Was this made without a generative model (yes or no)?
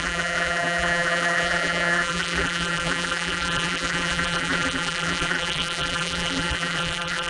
no